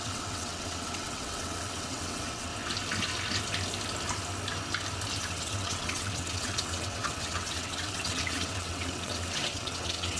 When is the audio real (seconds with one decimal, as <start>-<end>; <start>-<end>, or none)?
2.5-5.2